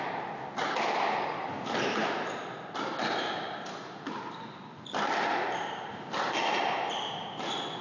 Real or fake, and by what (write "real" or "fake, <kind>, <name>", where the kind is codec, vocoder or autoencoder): real